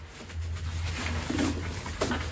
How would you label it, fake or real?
real